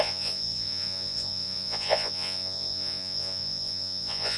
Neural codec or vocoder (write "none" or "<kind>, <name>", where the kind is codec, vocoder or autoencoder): vocoder, Vocos